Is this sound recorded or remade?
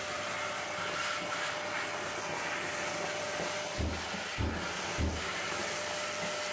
recorded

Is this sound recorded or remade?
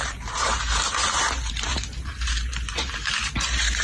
remade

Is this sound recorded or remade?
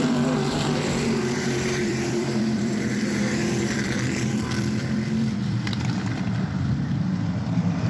remade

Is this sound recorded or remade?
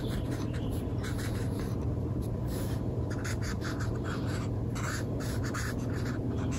remade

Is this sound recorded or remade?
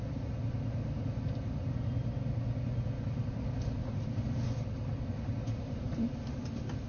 recorded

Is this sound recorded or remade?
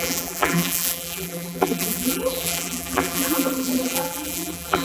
remade